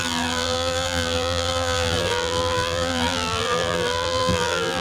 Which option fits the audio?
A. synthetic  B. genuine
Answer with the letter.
A